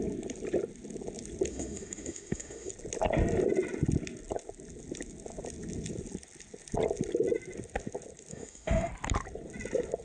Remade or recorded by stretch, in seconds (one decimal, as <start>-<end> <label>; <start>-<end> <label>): 0.0-1.5 recorded; 1.5-2.7 remade; 2.7-8.3 recorded; 8.3-8.9 remade; 8.9-10.0 recorded